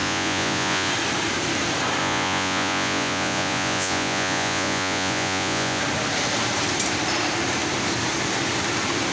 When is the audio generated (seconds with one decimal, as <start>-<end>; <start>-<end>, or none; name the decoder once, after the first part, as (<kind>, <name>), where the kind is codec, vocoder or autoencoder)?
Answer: 0.0-0.9 (vocoder, Vocos); 2.0-5.8